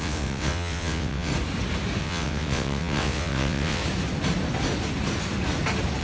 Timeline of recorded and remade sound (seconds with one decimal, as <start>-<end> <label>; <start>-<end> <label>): 0.0-1.3 remade; 1.3-2.0 recorded; 2.0-3.8 remade; 3.8-6.0 recorded